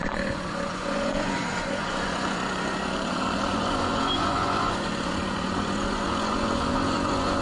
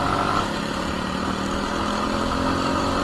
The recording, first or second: second